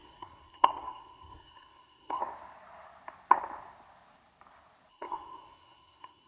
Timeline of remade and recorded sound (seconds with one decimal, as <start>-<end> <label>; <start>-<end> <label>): 0.0-2.2 remade; 2.2-4.9 recorded; 4.9-6.3 remade